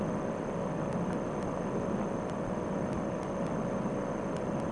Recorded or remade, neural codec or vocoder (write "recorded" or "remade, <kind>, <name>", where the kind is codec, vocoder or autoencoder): recorded